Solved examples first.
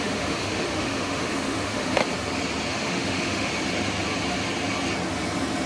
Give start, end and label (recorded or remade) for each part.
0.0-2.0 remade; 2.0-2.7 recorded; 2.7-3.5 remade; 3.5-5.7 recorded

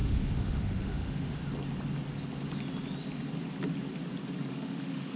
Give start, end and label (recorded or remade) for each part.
0.0-1.4 remade; 1.4-4.5 recorded; 4.5-5.2 remade